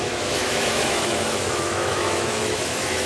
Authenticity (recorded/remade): remade